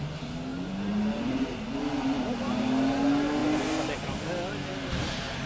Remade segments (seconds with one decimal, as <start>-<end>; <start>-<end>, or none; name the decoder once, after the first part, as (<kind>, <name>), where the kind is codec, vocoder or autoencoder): none